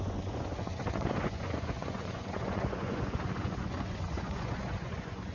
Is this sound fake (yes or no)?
yes